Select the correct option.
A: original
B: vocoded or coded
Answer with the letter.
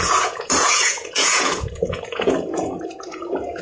B